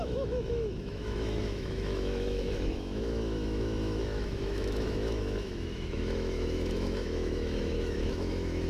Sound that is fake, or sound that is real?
fake